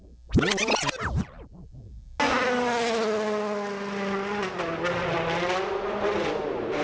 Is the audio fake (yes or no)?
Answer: no